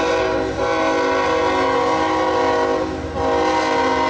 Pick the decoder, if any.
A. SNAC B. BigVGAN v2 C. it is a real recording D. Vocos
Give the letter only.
C